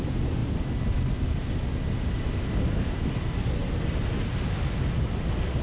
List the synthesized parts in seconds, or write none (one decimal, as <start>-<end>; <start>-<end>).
none